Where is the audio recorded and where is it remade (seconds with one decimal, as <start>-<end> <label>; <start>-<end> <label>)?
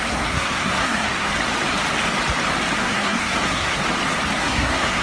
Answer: 0.0-1.3 remade; 1.3-2.8 recorded; 2.8-3.8 remade; 3.8-4.4 recorded; 4.4-5.0 remade